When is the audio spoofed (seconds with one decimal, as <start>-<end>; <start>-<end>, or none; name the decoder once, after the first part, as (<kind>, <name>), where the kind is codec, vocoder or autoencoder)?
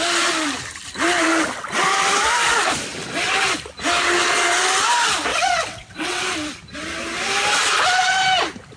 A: 5.3-6.2 (vocoder, WaveNeXt)